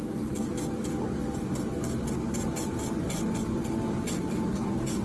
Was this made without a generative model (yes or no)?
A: yes